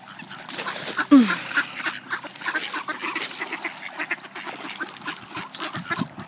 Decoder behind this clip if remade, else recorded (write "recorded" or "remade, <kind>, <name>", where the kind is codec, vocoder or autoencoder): recorded